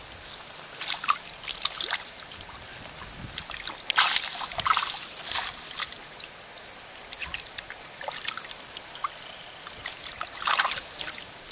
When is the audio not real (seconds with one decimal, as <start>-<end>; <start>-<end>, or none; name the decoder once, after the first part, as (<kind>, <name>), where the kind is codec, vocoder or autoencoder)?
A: none